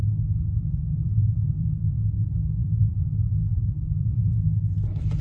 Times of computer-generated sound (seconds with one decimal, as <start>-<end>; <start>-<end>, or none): 0.9-1.9; 2.6-4.3